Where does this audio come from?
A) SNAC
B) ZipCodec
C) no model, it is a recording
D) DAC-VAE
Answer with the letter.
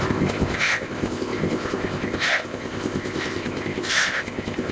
B